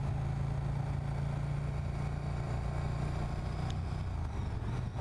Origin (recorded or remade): recorded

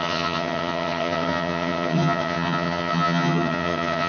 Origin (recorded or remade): remade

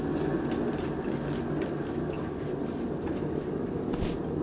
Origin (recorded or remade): recorded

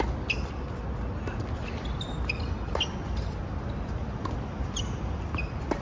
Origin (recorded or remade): recorded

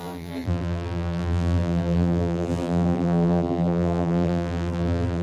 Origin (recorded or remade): remade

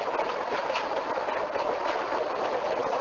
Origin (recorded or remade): recorded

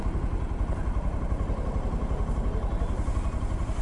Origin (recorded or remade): recorded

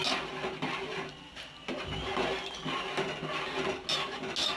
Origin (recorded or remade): recorded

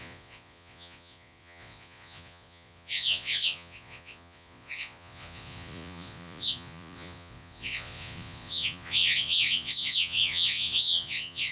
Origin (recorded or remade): remade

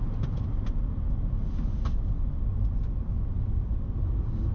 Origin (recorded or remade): recorded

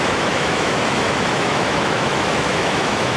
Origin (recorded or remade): remade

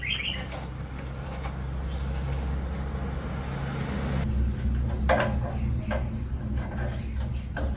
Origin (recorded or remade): recorded